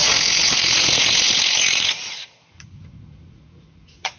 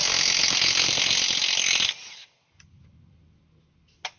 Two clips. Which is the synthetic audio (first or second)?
first